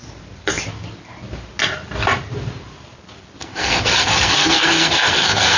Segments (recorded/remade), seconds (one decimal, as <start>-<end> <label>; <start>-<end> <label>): 0.0-3.4 recorded; 3.4-5.6 remade